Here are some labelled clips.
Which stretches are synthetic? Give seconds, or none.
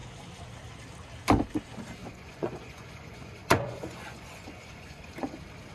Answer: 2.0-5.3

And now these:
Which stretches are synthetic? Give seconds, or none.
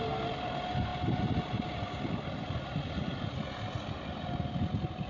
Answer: none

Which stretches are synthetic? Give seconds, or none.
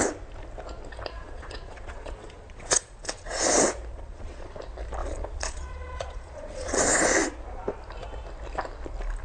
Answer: 1.2-3.4; 3.9-4.5; 5.0-6.8